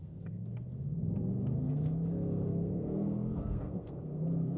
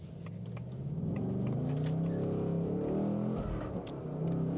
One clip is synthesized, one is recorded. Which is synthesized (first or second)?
first